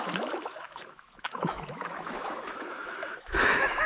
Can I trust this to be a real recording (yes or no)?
no